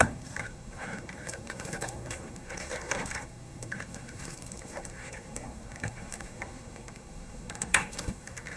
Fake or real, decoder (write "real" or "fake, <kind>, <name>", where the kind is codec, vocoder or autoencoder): fake, codec, SNAC